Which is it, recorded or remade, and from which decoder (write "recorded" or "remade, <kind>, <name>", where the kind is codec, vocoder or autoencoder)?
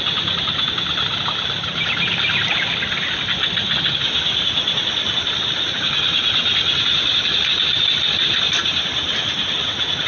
recorded